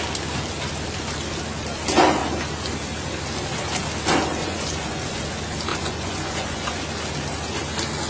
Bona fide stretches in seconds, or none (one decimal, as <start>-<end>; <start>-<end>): 0.0-4.4; 5.2-5.7; 6.8-8.1